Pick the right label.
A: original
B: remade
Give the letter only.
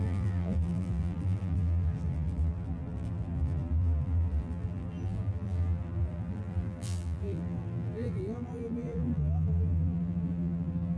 B